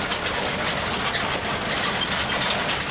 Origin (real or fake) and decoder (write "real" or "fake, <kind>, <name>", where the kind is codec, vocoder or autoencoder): real